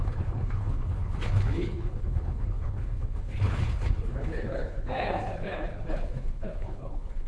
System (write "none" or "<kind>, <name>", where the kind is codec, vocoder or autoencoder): codec, HILCodec